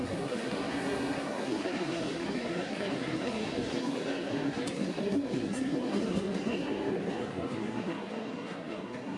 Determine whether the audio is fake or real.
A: fake